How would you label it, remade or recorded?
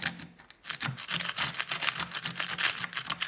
recorded